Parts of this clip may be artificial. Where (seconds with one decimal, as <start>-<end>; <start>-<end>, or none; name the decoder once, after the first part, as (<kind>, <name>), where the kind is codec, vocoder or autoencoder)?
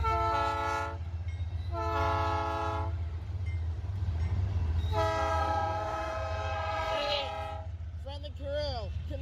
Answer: 5.3-7.2 (codec, SNAC)